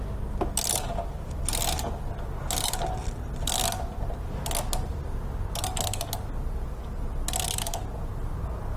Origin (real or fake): real